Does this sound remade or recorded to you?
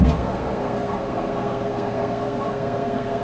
remade